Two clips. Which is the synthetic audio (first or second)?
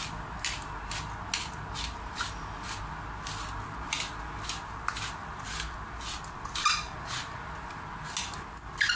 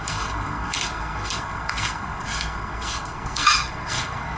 second